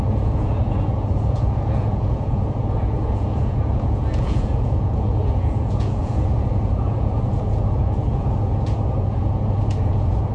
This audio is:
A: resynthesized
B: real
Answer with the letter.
A